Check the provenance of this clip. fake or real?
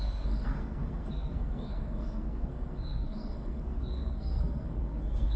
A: fake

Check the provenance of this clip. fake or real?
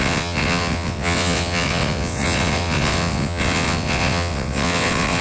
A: fake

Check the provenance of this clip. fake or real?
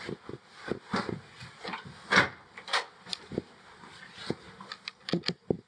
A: real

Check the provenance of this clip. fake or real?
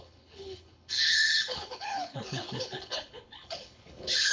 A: fake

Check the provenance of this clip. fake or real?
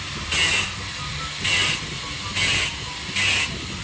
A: real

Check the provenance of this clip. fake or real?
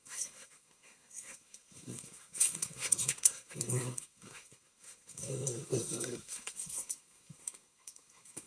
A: fake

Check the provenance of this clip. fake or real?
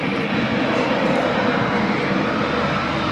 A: fake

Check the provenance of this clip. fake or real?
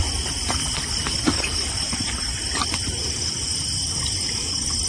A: real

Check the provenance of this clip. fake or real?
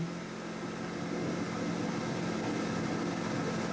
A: real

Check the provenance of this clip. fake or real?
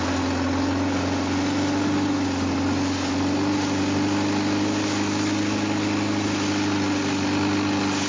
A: real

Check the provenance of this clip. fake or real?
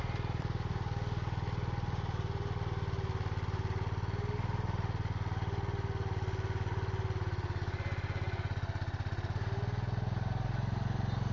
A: real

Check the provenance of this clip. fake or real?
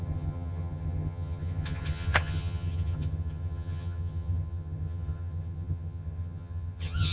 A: fake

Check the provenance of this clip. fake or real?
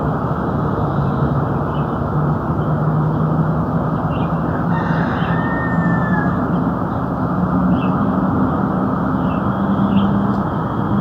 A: real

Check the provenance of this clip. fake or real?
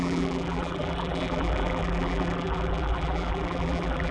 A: fake